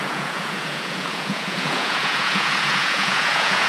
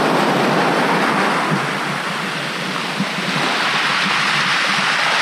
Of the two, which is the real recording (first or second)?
second